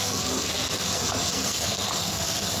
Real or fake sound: fake